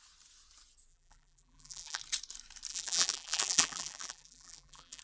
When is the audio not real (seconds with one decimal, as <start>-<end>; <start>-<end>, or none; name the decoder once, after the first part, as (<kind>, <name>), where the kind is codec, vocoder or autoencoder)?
0.9-2.0 (vocoder, BigVGAN v2); 2.7-5.0